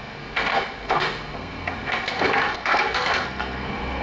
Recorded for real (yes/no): no